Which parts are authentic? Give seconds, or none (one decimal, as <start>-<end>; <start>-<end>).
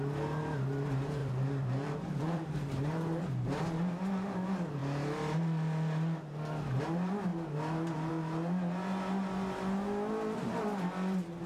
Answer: 0.0-1.2; 3.2-11.5